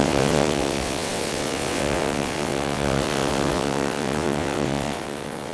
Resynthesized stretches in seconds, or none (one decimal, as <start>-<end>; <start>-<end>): 0.0-5.5